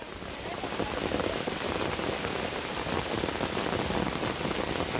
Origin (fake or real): real